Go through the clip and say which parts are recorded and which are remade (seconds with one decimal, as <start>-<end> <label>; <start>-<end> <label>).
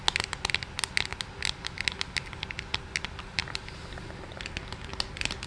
0.0-5.5 recorded